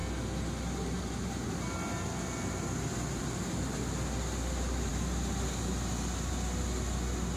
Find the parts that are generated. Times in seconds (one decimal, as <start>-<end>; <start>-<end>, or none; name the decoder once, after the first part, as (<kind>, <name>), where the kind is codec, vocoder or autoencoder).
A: none